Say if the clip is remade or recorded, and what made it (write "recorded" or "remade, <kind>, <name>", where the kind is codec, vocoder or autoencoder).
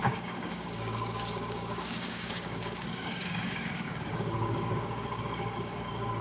remade, codec, DAC